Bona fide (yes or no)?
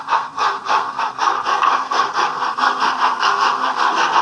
no